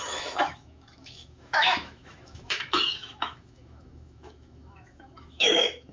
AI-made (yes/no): yes